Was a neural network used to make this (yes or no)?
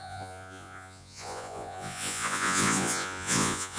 yes